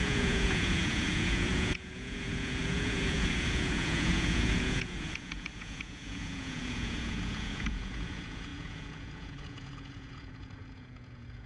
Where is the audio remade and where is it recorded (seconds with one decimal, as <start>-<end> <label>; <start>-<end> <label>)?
0.0-11.5 remade